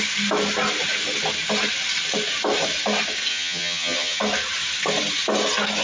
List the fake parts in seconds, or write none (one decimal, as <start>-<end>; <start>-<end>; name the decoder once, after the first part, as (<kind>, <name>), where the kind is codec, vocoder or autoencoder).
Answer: 3.3-4.2 (vocoder, HiFi-GAN)